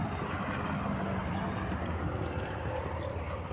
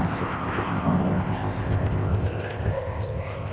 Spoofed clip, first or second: second